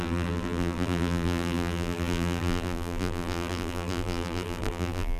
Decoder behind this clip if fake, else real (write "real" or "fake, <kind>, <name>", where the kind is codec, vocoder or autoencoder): fake, vocoder, BigVGAN v2